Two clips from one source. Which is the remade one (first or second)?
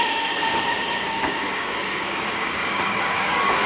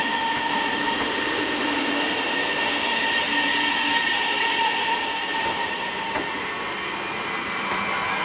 first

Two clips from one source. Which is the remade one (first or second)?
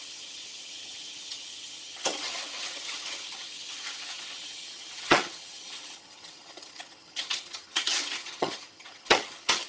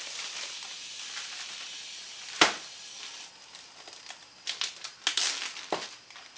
first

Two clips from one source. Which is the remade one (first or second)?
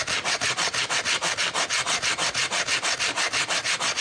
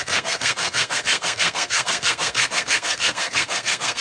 second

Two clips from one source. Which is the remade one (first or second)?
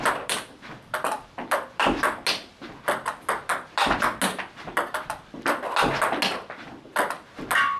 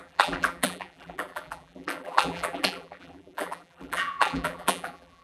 second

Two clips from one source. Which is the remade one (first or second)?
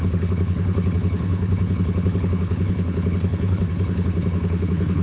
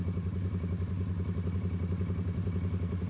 first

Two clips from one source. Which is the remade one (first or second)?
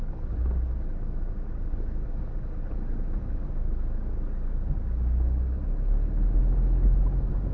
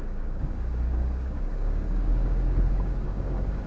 second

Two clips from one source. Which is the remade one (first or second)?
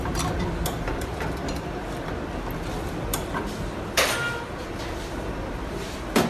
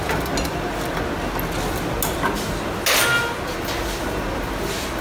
first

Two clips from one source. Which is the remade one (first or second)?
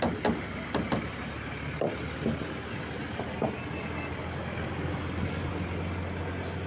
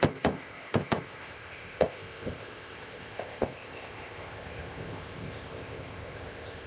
second